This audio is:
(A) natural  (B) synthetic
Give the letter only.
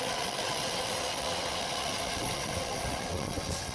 B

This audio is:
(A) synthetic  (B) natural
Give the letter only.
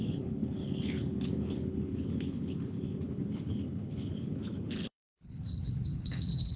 A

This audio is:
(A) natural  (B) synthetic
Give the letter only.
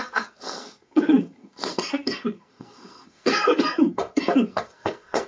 B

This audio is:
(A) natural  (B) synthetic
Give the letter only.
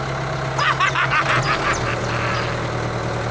A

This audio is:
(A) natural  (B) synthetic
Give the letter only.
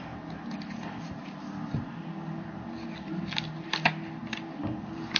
A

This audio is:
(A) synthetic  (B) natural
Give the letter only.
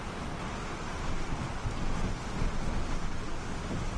B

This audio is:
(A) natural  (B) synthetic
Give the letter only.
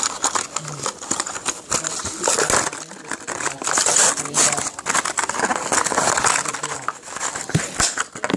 A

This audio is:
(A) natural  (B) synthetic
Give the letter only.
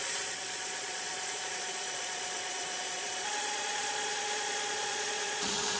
B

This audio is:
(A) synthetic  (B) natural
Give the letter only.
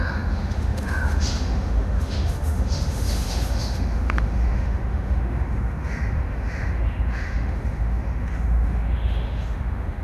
A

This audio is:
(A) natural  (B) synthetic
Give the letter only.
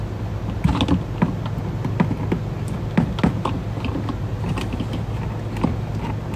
A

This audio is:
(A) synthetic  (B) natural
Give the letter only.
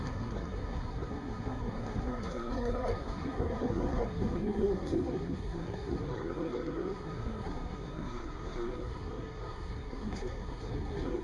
A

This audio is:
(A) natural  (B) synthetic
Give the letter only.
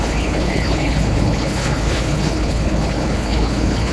B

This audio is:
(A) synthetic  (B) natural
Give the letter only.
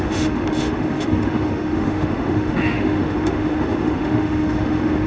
A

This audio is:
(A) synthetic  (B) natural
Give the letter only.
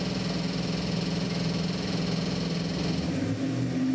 B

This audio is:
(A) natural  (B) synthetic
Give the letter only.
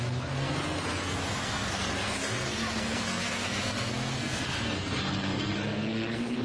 B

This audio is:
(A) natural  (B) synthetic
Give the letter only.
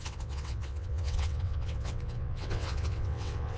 B